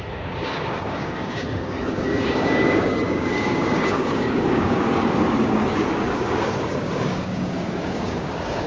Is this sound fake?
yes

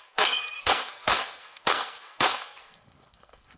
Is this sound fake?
yes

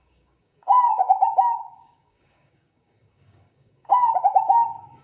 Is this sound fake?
yes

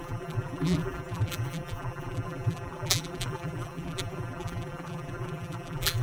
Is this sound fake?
yes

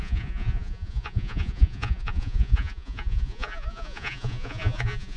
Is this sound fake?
yes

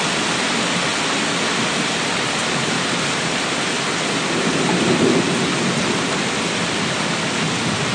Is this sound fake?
no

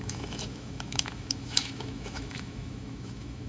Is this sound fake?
yes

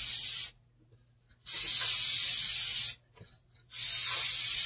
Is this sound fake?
no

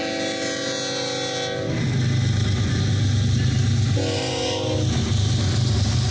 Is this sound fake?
no